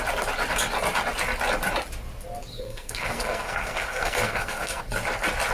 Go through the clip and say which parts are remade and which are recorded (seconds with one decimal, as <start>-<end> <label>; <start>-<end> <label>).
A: 0.0-2.5 recorded; 2.5-4.8 remade; 4.8-5.5 recorded